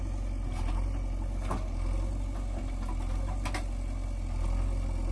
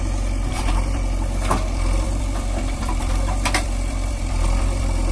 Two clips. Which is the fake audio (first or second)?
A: second